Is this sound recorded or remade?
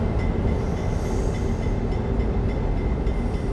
recorded